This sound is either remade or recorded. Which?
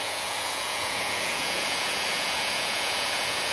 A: remade